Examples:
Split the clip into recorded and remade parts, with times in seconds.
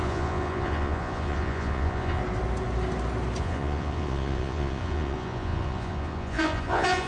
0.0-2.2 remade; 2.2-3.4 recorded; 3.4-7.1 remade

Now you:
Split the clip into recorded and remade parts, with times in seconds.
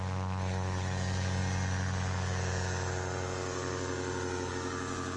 0.0-5.2 recorded